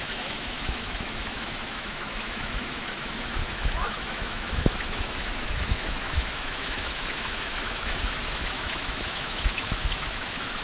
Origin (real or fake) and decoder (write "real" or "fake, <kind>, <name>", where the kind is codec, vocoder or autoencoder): fake, autoencoder, DAC-VAE